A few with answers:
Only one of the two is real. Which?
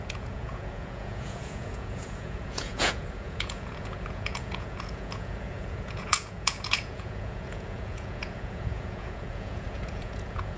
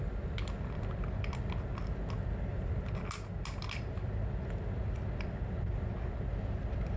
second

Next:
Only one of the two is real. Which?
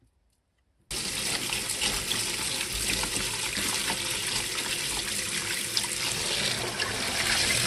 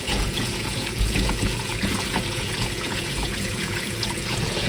first